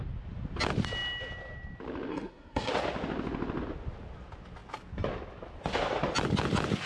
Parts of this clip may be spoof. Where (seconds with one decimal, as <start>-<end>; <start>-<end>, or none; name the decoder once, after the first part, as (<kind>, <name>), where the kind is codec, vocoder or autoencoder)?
2.1-2.7 (codec, SNAC)